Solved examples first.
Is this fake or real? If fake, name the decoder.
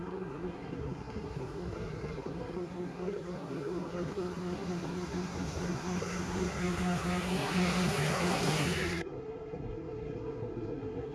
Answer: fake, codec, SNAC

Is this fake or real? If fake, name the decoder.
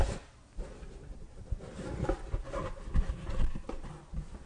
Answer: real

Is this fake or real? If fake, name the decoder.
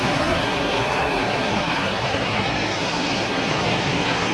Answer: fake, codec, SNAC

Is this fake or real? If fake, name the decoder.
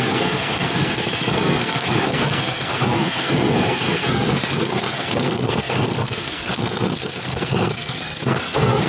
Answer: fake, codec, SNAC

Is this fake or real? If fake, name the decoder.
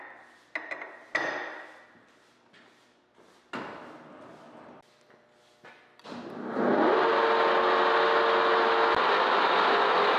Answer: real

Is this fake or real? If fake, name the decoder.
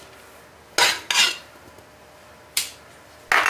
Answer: real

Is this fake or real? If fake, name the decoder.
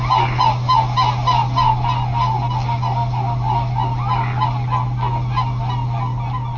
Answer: real